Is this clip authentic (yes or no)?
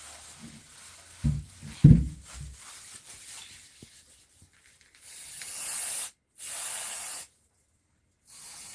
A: yes